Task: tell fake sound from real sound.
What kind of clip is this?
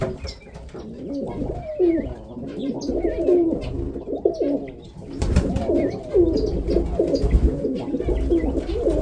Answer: real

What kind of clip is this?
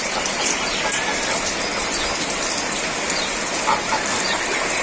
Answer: real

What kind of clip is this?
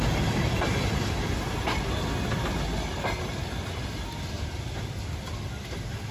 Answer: real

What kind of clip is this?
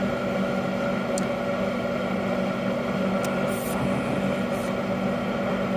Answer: real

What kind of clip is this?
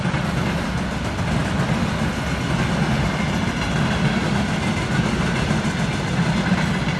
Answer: real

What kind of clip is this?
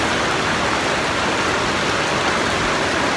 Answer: real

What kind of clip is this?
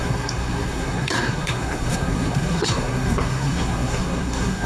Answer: fake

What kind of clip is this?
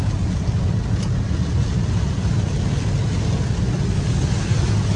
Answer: real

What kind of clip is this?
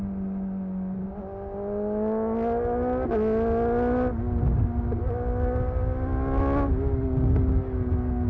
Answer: real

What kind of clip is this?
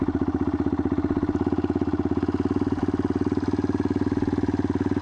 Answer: real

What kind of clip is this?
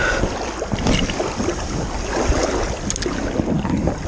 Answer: real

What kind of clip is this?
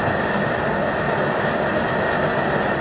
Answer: real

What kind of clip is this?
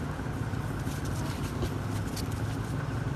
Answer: real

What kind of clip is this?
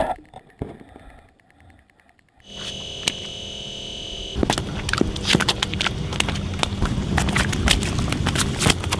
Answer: real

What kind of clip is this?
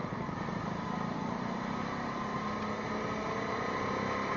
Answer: real